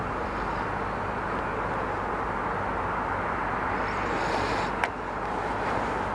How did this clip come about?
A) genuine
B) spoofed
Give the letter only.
A